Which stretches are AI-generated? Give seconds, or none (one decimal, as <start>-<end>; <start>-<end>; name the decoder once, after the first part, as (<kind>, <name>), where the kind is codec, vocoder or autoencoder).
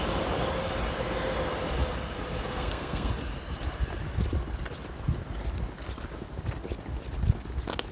2.5-3.1 (codec, SNAC)